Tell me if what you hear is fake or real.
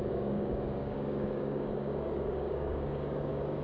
fake